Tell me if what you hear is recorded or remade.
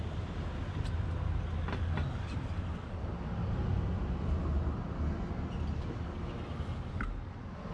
recorded